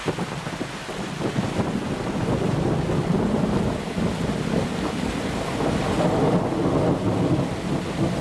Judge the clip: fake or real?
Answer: real